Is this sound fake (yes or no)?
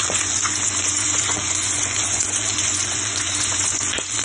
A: yes